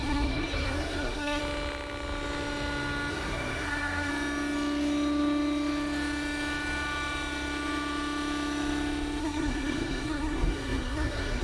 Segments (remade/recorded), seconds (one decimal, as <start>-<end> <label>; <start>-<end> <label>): 0.0-1.4 remade; 1.4-3.1 recorded; 3.1-4.1 remade; 4.1-9.2 recorded; 9.2-11.4 remade